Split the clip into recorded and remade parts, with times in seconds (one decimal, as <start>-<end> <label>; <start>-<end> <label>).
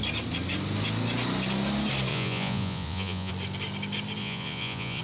0.0-2.1 recorded; 2.1-3.3 remade; 3.3-4.2 recorded; 4.2-5.0 remade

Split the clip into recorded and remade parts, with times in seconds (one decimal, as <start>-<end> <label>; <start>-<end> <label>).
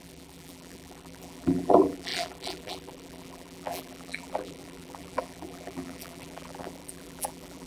0.0-7.7 remade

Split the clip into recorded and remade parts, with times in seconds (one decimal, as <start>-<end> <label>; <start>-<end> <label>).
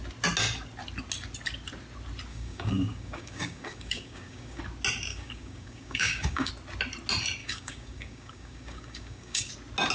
0.0-2.3 recorded; 2.3-4.6 remade; 4.6-5.1 recorded; 5.1-6.5 remade; 6.5-7.4 recorded; 7.4-9.5 remade; 9.5-9.9 recorded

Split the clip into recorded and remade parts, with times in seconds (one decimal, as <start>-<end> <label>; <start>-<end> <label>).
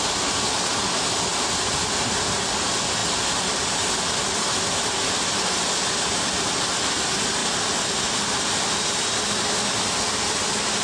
0.0-10.8 recorded